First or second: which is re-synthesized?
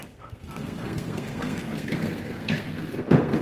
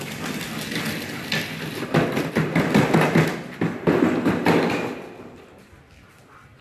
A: first